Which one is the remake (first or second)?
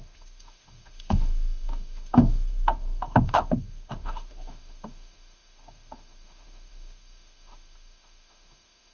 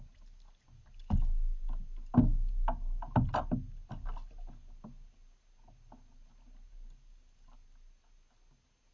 first